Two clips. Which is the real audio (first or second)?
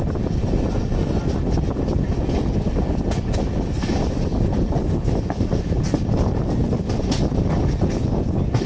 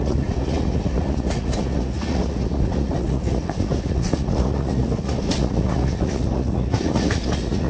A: first